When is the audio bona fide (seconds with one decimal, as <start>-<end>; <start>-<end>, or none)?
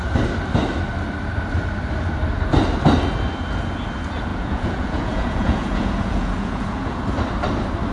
0.0-4.3; 7.0-7.9